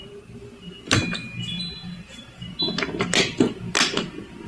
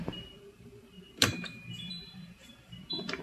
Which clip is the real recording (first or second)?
first